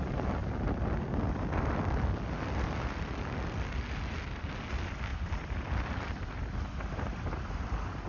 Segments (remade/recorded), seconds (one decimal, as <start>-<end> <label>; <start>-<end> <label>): 0.0-8.1 recorded